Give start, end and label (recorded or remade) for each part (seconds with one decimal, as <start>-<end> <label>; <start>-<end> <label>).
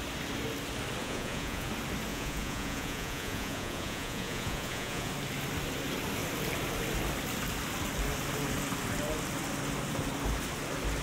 0.0-1.0 recorded; 1.0-1.7 remade; 1.7-2.1 recorded; 2.1-5.1 remade; 5.1-11.0 recorded